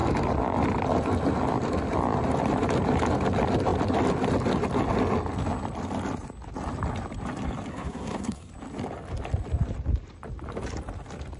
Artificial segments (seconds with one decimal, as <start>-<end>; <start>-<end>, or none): 7.7-8.5